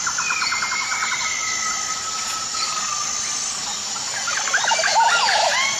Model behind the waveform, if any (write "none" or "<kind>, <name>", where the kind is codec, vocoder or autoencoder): none